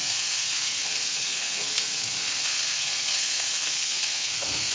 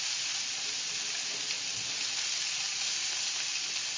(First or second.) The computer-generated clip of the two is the first